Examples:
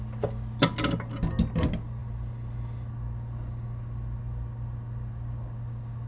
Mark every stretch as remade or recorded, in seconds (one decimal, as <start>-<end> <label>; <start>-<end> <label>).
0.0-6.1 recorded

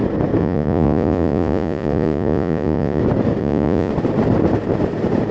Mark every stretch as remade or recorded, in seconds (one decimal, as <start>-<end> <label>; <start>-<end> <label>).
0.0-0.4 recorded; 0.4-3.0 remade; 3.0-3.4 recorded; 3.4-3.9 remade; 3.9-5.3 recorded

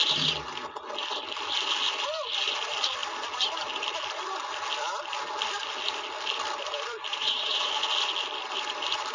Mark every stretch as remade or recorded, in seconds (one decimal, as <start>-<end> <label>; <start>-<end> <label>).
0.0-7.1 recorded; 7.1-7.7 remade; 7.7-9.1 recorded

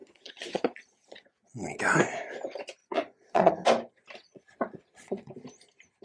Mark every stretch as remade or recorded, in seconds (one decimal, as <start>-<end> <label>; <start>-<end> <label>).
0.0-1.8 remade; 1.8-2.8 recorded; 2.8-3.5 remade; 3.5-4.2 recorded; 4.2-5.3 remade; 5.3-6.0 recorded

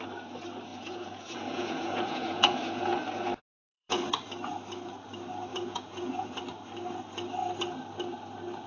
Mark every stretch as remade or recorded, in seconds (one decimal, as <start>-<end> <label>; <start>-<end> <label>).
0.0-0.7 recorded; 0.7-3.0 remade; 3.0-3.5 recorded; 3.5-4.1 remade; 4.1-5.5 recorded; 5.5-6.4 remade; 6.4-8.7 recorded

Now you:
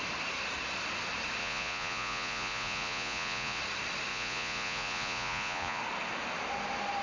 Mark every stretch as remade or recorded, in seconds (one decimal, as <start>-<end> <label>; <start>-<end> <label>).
0.0-1.4 recorded; 1.4-3.6 remade; 3.6-4.1 recorded; 4.1-5.8 remade; 5.8-7.0 recorded